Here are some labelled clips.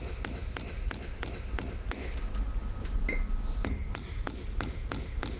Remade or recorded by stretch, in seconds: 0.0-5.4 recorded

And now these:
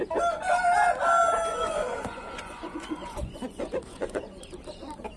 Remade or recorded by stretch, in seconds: 0.0-1.5 recorded; 1.5-4.6 remade; 4.6-5.2 recorded

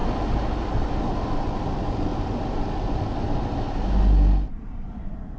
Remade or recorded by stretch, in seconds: 0.0-5.4 recorded

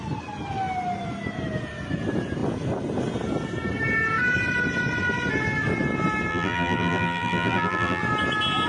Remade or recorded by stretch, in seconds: 0.0-6.3 recorded; 6.3-8.0 remade; 8.0-8.7 recorded